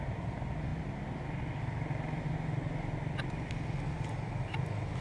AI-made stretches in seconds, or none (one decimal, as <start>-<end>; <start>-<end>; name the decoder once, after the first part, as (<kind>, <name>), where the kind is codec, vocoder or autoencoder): none